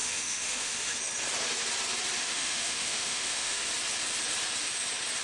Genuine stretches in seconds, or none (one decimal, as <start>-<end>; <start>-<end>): 1.0-2.2; 3.7-5.2